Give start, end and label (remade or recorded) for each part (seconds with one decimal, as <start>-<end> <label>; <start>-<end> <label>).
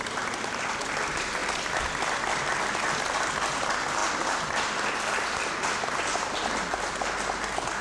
0.0-7.8 recorded